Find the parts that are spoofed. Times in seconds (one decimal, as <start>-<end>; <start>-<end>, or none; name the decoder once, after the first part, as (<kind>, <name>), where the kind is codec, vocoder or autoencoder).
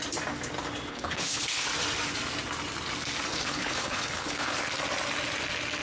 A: 0.9-1.7 (codec, HILCodec); 3.3-4.6